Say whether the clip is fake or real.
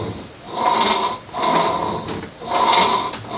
real